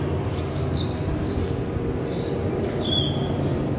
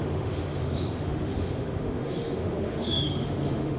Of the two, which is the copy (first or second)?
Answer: second